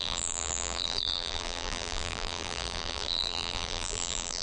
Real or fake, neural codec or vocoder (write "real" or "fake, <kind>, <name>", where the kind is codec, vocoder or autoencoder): fake, vocoder, BigVGAN v2